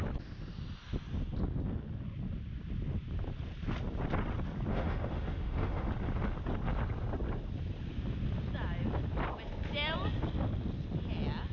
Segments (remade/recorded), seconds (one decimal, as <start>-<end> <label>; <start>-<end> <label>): 0.0-4.7 recorded; 4.7-5.9 remade; 5.9-11.5 recorded